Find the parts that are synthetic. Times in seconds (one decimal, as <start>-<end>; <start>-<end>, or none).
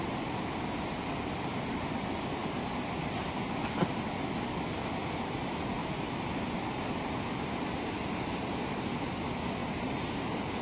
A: 2.4-3.3; 9.6-10.6